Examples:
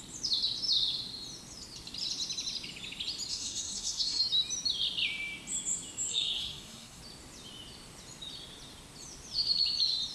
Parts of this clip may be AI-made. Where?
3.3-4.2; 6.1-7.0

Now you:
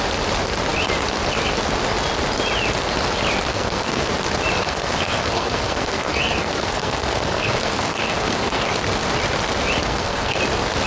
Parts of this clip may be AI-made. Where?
3.5-4.1; 4.6-8.7; 9.8-10.4

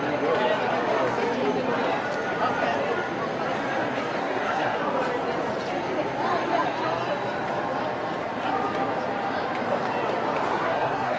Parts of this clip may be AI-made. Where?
4.2-4.8; 10.5-11.2